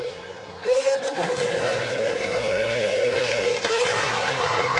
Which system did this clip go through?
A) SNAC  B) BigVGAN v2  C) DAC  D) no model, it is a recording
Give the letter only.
A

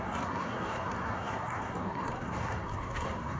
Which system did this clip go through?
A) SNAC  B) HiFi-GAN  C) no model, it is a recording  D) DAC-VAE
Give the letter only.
A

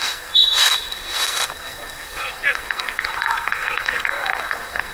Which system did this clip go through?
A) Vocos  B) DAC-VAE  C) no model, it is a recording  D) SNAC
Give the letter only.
D